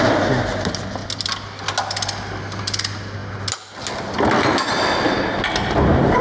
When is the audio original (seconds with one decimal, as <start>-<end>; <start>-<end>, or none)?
0.0-6.2